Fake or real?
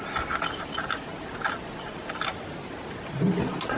real